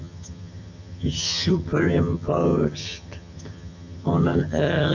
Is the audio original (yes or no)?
no